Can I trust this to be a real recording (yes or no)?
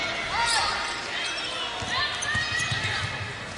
yes